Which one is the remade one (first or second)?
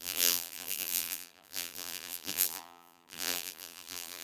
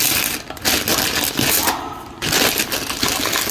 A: first